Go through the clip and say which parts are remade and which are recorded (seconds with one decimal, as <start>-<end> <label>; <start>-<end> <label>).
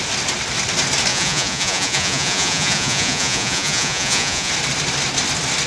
0.0-1.1 recorded; 1.1-4.5 remade; 4.5-5.7 recorded